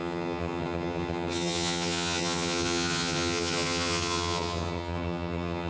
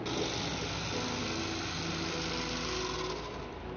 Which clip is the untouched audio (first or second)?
second